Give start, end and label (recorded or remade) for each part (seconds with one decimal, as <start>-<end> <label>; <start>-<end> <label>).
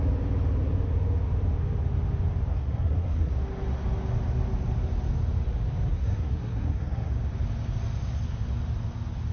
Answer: 0.0-2.5 recorded; 2.5-3.3 remade; 3.3-5.9 recorded; 5.9-7.1 remade; 7.1-9.3 recorded